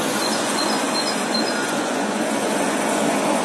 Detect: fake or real fake